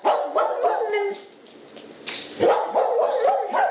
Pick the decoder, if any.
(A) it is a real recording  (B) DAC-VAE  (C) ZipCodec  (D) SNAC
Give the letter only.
A